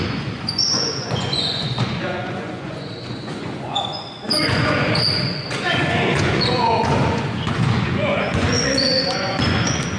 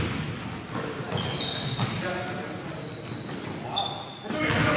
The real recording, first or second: second